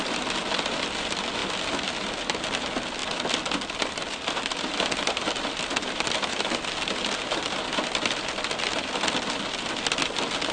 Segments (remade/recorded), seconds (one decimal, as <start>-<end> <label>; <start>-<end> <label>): 0.0-3.0 recorded; 3.0-6.5 remade; 6.5-10.5 recorded